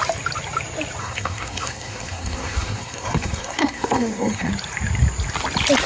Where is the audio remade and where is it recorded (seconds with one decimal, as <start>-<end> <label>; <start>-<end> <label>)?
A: 0.0-1.0 recorded; 1.0-4.5 remade; 4.5-5.9 recorded